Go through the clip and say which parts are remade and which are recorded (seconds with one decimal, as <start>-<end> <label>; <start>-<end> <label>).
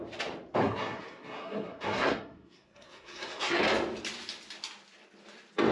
0.0-0.6 recorded; 0.6-3.6 remade; 3.6-5.7 recorded